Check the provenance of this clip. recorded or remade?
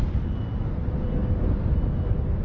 recorded